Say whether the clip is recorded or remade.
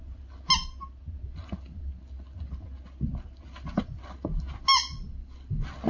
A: recorded